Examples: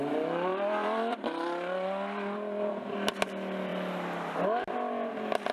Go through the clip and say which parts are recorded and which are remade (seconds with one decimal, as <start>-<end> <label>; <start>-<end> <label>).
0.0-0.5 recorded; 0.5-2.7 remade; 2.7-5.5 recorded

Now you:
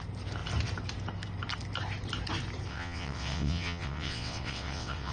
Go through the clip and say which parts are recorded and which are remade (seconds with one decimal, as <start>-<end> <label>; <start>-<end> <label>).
0.0-2.7 recorded; 2.7-5.1 remade

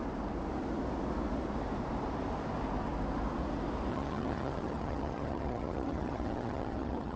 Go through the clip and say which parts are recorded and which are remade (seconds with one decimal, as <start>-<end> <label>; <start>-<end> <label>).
0.0-3.9 recorded; 3.9-7.2 remade

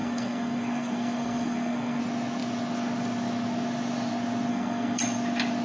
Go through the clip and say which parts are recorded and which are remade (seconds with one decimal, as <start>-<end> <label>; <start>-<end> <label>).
0.0-2.0 remade; 2.0-4.5 recorded; 4.5-5.0 remade; 5.0-5.6 recorded